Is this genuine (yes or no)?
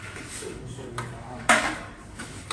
no